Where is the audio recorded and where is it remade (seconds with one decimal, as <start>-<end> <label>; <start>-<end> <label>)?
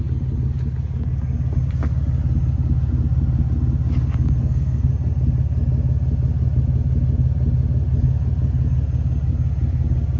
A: 0.0-4.4 recorded; 4.4-4.9 remade; 4.9-10.2 recorded